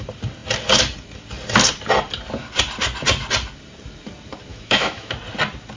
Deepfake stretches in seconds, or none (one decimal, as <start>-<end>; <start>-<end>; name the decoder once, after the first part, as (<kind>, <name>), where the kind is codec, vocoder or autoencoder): 4.5-5.1 (autoencoder, DAC-VAE)